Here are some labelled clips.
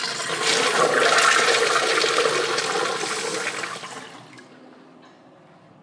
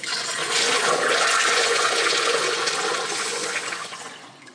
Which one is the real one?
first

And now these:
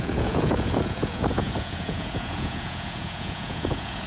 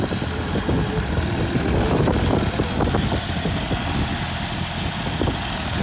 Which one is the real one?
second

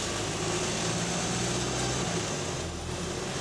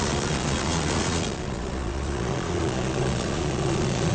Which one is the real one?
first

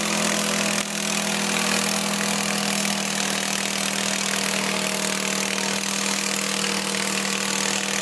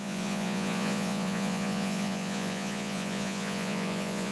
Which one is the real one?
first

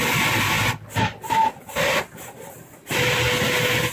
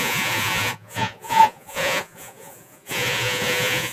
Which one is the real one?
first